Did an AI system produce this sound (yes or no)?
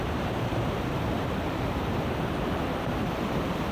yes